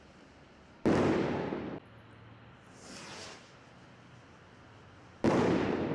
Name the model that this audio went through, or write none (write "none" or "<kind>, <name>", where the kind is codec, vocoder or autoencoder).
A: none